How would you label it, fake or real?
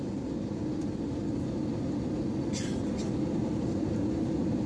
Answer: real